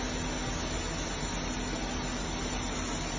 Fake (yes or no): no